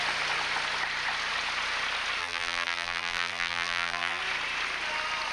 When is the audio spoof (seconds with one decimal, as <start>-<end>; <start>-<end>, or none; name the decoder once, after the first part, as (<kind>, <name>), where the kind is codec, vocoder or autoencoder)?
2.2-4.2 (vocoder, BigVGAN v2)